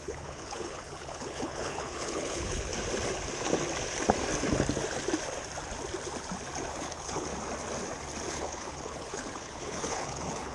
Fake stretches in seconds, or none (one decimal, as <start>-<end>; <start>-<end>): 0.0-2.7; 6.7-7.3; 8.3-10.5